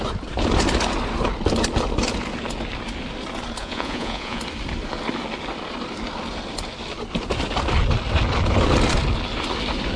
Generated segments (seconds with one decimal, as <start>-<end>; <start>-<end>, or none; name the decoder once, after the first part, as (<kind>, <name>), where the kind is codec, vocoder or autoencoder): 3.6-4.4 (vocoder, Vocos)